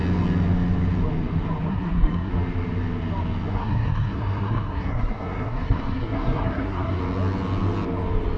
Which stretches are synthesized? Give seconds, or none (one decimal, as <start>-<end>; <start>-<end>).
1.7-2.3; 3.5-7.0